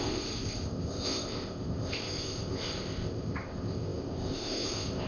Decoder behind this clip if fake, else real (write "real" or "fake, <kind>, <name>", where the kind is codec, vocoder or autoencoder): fake, codec, ZipCodec